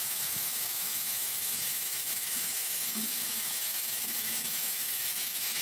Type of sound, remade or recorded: remade